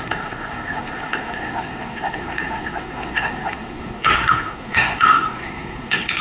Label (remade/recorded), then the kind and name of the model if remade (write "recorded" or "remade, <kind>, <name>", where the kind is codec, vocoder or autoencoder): remade, codec, SNAC